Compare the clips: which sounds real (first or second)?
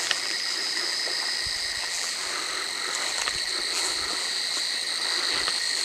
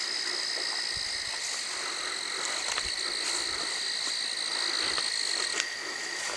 second